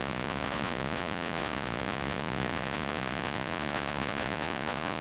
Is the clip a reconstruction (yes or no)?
yes